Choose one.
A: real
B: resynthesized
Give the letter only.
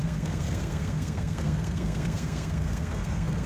B